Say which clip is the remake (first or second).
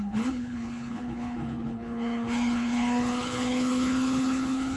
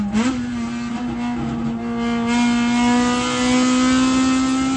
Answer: first